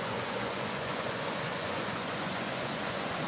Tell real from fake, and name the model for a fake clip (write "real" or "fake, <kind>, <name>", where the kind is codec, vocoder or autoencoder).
fake, vocoder, Vocos